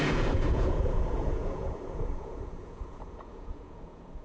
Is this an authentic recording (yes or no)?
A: no